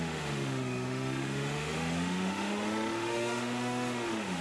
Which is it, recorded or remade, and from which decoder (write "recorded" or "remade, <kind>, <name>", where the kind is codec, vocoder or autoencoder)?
remade, autoencoder, DAC-VAE